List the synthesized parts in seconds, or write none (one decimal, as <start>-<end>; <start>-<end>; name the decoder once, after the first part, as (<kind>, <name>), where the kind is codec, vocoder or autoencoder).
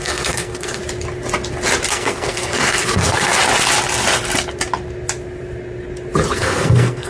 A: 0.0-0.8 (codec, SNAC); 1.9-3.4; 6.3-7.1